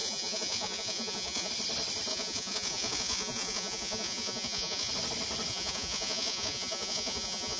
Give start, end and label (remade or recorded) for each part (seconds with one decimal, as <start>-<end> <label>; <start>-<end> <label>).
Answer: 0.0-1.5 remade; 1.5-2.1 recorded; 2.1-4.9 remade; 4.9-5.5 recorded; 5.5-7.6 remade